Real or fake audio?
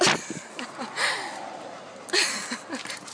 real